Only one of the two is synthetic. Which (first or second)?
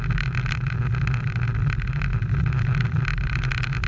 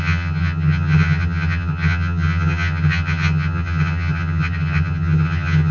second